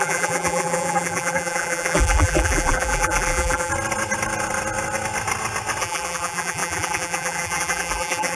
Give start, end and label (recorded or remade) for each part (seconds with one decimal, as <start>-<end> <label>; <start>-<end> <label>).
0.0-3.7 remade; 3.7-5.8 recorded; 5.8-8.4 remade